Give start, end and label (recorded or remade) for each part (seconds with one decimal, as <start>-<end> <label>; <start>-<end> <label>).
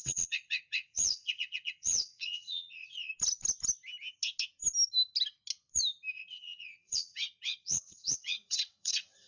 0.0-3.1 remade; 3.1-6.1 recorded; 6.1-9.3 remade